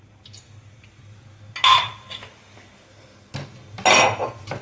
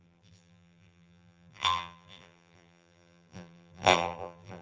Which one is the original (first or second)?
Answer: first